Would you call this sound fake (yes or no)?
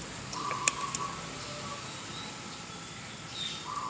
yes